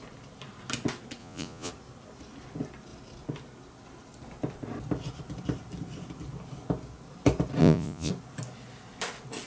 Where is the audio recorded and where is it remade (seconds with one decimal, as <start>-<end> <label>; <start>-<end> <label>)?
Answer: 0.0-1.2 recorded; 1.2-1.7 remade; 1.7-7.6 recorded; 7.6-8.1 remade; 8.1-9.5 recorded